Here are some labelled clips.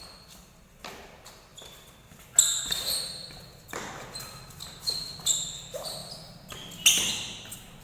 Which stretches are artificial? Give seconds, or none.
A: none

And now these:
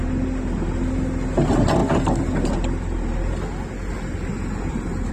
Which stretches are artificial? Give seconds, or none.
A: none

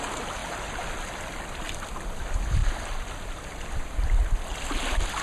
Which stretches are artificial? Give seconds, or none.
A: none

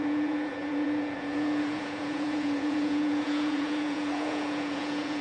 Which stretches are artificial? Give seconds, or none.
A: 0.0-5.2 (vocoder, Vocos)

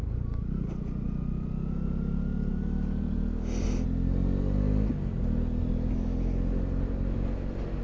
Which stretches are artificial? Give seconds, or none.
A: none